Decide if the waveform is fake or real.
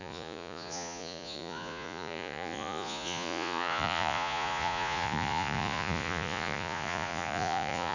fake